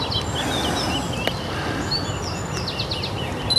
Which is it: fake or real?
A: real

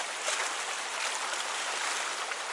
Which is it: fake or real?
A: real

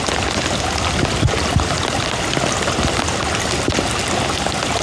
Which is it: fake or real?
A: real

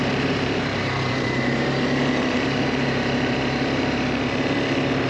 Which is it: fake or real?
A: fake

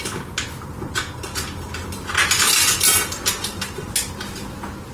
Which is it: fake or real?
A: real